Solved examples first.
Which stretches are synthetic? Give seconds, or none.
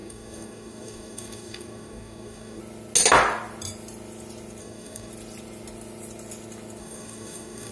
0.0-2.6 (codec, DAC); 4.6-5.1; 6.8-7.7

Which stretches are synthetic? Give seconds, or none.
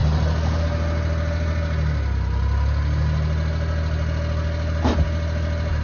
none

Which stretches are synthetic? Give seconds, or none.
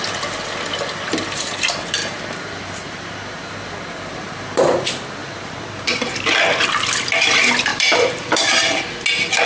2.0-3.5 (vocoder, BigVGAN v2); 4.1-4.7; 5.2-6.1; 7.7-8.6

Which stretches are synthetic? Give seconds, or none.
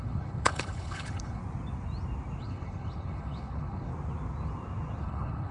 0.0-1.4 (codec, HILCodec); 2.4-3.9; 5.0-5.5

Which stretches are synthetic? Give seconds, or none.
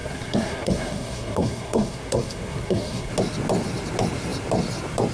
0.0-3.1 (codec, SNAC)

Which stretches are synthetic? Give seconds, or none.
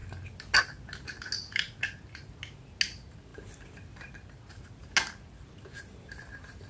none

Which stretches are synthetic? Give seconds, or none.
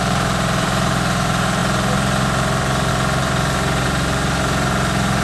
0.0-5.2 (vocoder, BigVGAN v2)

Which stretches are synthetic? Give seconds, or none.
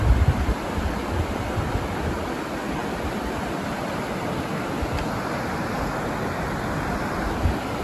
none